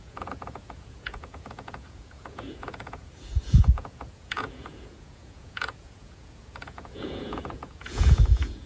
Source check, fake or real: fake